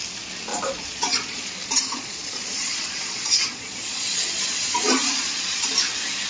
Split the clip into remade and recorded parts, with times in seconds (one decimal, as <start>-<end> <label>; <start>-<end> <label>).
0.0-0.5 recorded; 0.5-1.5 remade; 1.5-1.9 recorded; 1.9-5.7 remade; 5.7-6.3 recorded